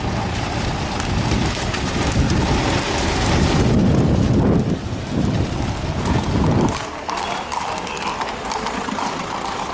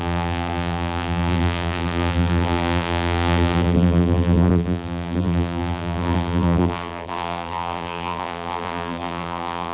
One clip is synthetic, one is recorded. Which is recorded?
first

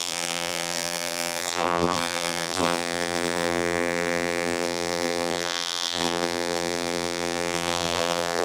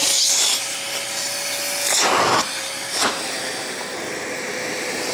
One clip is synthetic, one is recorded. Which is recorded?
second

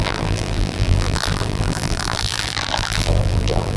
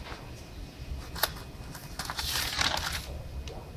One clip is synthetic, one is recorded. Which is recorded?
second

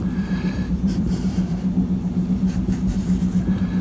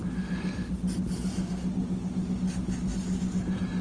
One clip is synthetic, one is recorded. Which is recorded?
second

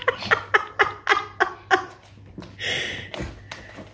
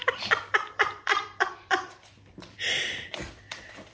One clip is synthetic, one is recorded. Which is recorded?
first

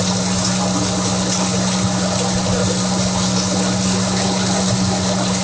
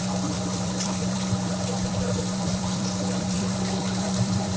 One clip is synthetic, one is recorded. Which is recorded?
first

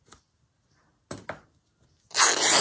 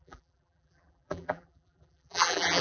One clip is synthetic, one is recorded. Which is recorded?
first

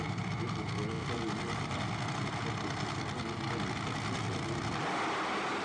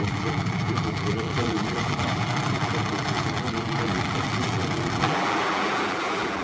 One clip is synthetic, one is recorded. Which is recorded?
first